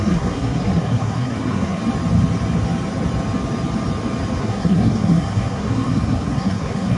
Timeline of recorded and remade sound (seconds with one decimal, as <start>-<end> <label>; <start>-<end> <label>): 0.0-1.8 remade; 1.8-4.4 recorded; 4.4-7.0 remade

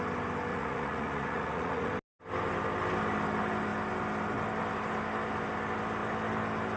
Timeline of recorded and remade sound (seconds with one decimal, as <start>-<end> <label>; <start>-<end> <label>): 0.0-0.5 recorded; 0.5-1.9 remade; 1.9-6.8 recorded

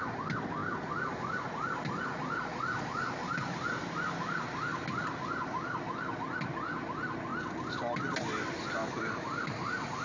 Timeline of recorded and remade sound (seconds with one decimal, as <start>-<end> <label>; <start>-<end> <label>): 0.0-10.0 recorded

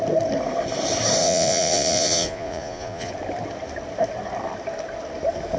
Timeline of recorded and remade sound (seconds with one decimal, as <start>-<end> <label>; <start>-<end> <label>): 0.0-1.2 recorded; 1.2-3.1 remade; 3.1-5.6 recorded

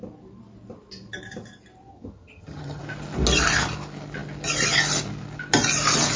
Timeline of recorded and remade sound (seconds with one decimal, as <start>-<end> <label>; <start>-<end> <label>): 0.0-1.9 recorded; 1.9-2.8 remade; 2.8-6.2 recorded

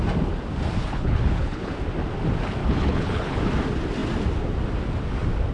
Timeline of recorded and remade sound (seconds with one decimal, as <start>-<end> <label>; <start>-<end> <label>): 0.0-0.8 recorded; 0.8-1.7 remade; 1.7-2.6 recorded; 2.6-3.4 remade; 3.4-5.5 recorded

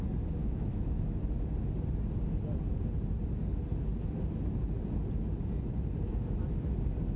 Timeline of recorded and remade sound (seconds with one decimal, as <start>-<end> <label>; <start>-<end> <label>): 0.0-0.4 recorded; 0.4-1.2 remade; 1.2-7.2 recorded